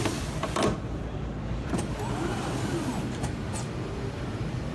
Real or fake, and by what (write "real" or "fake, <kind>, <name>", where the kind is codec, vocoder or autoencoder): real